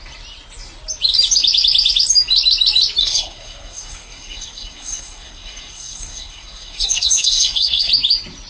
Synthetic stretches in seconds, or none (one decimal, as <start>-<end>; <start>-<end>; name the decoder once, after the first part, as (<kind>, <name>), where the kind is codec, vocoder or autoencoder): 3.0-7.9 (codec, SNAC)